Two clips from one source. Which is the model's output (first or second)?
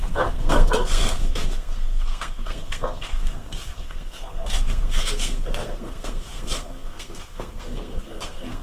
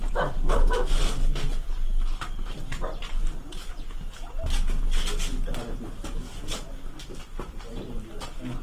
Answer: first